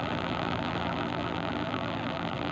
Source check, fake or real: fake